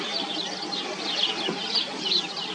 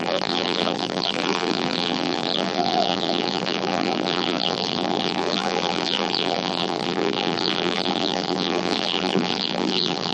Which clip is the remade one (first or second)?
second